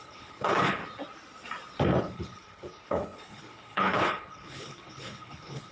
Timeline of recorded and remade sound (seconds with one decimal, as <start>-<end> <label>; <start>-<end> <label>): 0.0-0.8 remade; 0.8-2.0 recorded; 2.0-5.7 remade